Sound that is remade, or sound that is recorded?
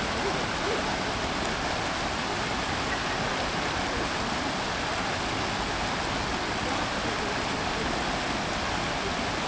recorded